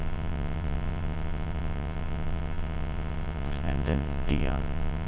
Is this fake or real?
fake